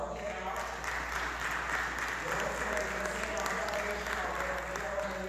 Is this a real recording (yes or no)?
yes